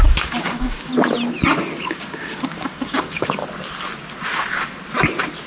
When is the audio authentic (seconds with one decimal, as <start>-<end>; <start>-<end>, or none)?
0.9-1.8; 3.4-5.5